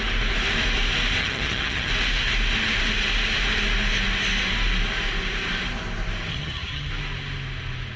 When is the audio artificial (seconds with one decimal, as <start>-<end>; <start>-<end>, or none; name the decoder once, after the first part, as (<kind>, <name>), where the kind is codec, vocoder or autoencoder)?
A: 1.2-1.9 (vocoder, HiFi-GAN); 6.3-6.9